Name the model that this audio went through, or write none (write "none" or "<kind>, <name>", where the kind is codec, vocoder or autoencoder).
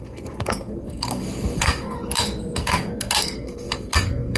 codec, SNAC